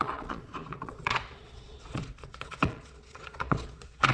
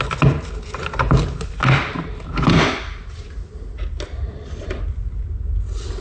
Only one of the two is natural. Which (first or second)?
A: second